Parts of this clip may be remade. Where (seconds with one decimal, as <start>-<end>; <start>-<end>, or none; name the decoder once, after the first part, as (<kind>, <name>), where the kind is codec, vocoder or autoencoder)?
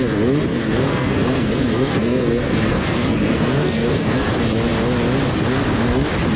0.5-4.3 (codec, SNAC)